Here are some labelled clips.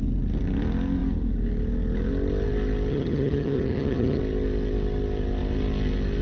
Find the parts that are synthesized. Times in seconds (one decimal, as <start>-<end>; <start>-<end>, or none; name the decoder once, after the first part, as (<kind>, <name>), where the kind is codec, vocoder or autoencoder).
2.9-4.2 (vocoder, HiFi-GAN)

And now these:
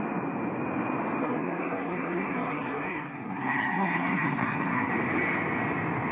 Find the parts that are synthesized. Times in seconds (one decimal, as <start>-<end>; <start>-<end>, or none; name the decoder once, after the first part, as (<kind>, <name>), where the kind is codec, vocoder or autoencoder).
1.2-4.9 (codec, SNAC)

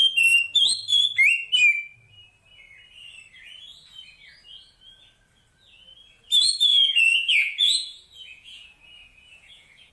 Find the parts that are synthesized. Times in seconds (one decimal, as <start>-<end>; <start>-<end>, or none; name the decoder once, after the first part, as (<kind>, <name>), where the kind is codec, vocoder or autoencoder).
6.7-9.9 (vocoder, Vocos)

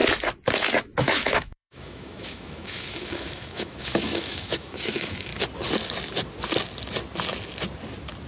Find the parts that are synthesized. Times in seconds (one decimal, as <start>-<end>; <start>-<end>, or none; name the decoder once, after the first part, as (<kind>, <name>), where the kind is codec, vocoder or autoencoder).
1.0-5.3 (autoencoder, DAC-VAE)

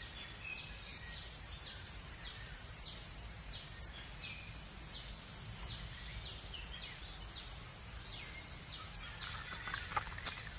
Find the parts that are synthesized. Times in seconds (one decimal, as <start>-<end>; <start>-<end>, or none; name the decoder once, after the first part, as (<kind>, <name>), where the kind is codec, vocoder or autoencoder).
0.9-3.9 (vocoder, BigVGAN v2)